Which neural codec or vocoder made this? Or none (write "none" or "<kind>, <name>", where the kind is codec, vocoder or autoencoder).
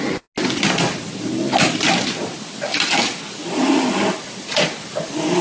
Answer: none